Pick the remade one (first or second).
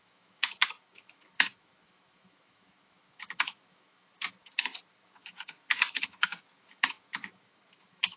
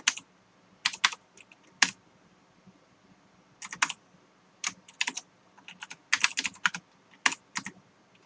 first